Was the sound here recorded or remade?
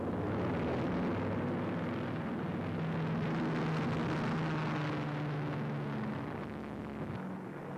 recorded